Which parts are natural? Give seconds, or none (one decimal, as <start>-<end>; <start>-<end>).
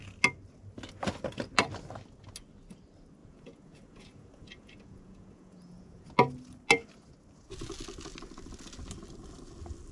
0.0-3.2; 6.1-9.9